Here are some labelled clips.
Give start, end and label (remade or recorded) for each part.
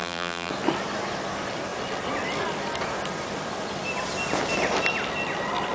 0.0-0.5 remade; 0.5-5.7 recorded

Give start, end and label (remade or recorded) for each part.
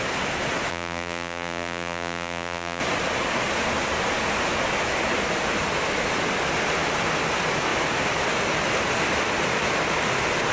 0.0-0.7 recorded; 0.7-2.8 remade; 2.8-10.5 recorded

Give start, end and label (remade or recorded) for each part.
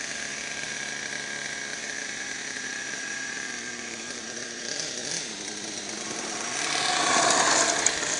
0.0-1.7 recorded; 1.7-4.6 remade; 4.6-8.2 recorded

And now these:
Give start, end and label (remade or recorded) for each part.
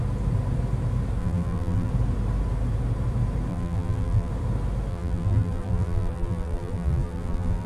0.0-1.2 recorded; 1.2-1.9 remade; 1.9-3.5 recorded; 3.5-4.3 remade; 4.3-4.9 recorded; 4.9-7.7 remade